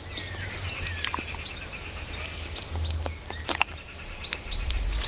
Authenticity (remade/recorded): recorded